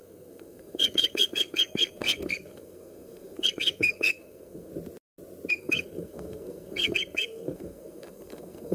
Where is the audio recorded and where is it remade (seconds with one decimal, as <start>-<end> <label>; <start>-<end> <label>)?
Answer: 0.0-4.7 remade; 4.7-5.5 recorded; 5.5-8.7 remade